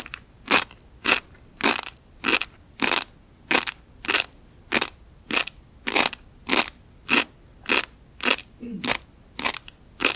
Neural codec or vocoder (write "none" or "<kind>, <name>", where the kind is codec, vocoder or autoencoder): none